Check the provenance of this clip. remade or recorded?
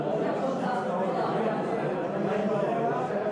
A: remade